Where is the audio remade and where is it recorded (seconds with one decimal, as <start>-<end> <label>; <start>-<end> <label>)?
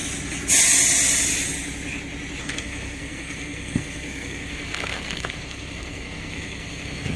0.0-2.4 recorded; 2.4-7.2 remade